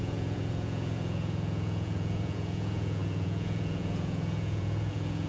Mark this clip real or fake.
fake